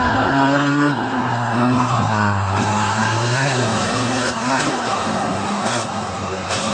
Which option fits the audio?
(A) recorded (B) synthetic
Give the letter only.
B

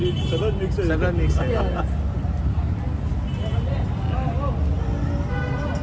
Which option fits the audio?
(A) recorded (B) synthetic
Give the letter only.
A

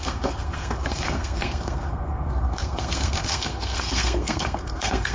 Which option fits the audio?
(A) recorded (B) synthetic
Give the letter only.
B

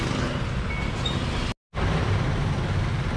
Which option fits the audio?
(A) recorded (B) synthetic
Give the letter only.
A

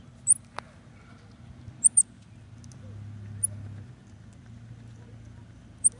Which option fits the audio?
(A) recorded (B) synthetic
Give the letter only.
A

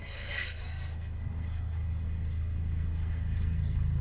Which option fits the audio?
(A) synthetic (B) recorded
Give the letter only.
A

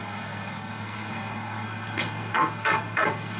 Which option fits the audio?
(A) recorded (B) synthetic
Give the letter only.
B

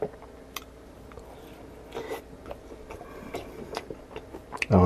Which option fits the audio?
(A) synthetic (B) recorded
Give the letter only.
B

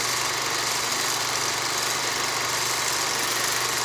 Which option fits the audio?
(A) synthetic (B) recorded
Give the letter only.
B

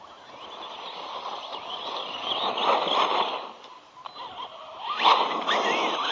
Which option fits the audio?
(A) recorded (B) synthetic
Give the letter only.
A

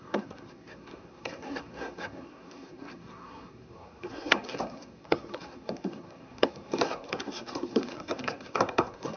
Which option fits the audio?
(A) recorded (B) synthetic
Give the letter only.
B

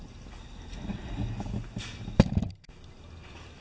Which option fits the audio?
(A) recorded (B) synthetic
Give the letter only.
A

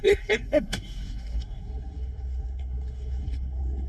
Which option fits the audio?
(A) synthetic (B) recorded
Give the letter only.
A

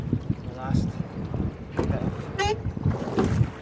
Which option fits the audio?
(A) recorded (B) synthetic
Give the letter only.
A